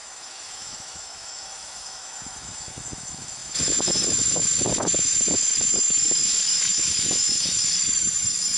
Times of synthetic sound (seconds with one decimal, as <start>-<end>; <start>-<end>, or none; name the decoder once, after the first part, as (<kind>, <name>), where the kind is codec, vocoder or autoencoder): 0.0-8.6 (autoencoder, DAC-VAE)